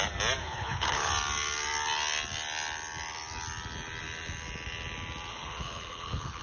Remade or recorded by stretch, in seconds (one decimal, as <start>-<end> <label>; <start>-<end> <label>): 0.0-0.4 recorded; 0.4-1.1 remade; 1.1-5.3 recorded; 5.3-6.4 remade